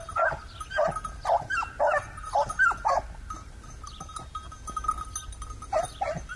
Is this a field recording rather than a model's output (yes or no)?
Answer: yes